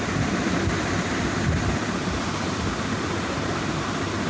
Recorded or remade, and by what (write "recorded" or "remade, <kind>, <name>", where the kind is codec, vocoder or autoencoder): recorded